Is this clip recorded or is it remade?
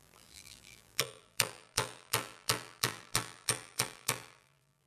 remade